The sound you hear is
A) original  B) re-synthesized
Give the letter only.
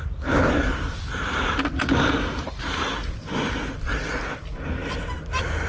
A